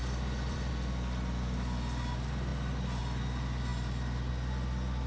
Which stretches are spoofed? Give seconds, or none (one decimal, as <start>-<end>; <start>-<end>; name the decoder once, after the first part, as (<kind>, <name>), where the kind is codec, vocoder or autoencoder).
0.0-0.7 (vocoder, BigVGAN v2)